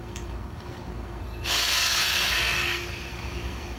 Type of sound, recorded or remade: remade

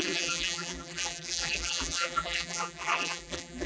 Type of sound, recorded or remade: remade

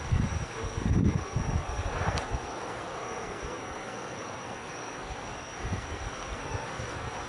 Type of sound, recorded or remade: remade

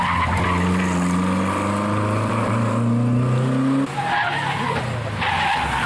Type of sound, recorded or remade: recorded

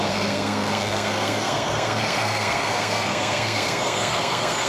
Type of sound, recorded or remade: remade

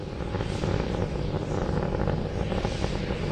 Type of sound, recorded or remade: recorded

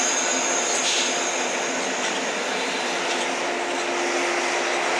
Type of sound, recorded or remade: recorded